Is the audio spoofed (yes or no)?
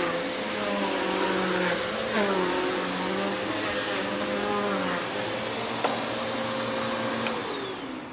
no